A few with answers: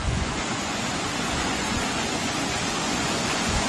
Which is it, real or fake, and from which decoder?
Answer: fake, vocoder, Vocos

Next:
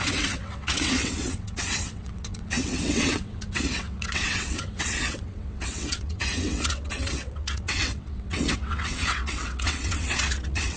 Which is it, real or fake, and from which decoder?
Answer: fake, vocoder, WaveNeXt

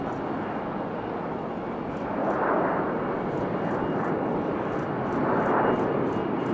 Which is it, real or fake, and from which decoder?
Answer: real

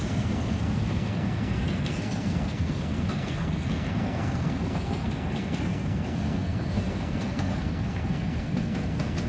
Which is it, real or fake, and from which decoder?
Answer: fake, codec, SNAC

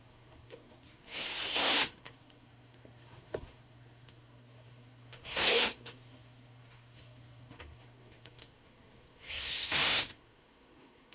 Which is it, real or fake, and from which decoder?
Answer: fake, codec, SNAC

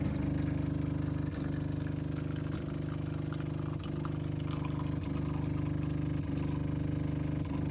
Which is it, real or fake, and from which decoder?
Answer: real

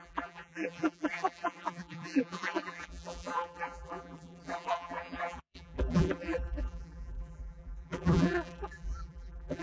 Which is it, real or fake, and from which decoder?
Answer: fake, vocoder, BigVGAN v2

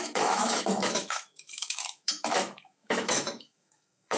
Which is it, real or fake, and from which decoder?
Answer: fake, autoencoder, DAC-VAE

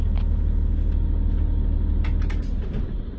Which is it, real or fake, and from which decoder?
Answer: real